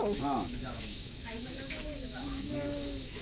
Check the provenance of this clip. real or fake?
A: fake